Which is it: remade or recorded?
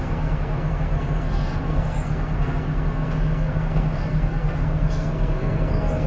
remade